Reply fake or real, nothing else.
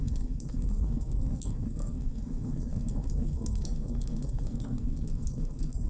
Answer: fake